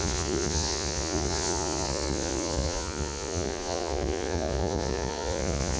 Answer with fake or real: fake